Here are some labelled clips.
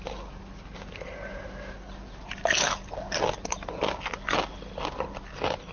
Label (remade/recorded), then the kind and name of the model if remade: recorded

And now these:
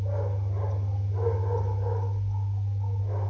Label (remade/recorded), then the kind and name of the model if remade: recorded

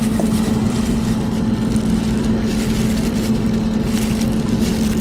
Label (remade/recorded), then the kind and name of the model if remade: recorded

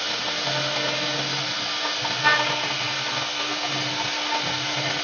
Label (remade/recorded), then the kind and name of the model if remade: recorded